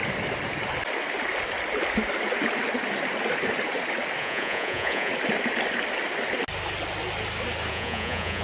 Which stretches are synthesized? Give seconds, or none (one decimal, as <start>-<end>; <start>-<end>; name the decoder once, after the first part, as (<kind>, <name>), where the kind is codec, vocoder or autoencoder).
4.2-5.1 (vocoder, Vocos); 7.7-8.4